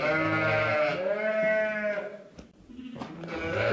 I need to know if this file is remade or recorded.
recorded